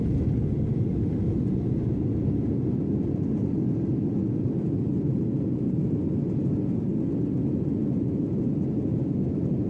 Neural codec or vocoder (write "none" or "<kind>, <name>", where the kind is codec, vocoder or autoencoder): none